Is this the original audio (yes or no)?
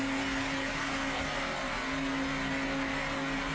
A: yes